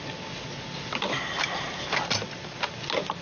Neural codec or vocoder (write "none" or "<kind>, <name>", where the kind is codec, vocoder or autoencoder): none